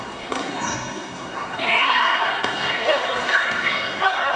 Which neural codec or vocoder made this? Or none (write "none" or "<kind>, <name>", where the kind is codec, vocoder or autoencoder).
codec, SNAC